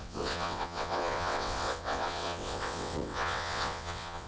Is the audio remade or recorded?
remade